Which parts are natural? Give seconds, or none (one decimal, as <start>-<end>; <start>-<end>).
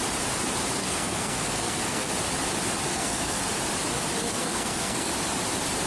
0.0-0.8; 2.1-2.9; 3.4-4.2; 5.1-5.9